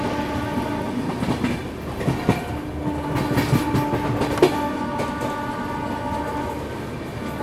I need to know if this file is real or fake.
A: real